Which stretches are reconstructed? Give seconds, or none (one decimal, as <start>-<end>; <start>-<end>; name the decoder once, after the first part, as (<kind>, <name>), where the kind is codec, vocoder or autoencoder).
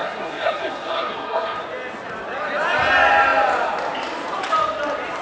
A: 0.0-1.6 (codec, SNAC)